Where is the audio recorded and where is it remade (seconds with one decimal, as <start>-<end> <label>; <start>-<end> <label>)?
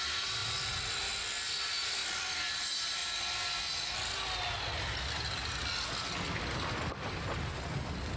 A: 0.0-2.0 recorded; 2.0-2.6 remade; 2.6-8.2 recorded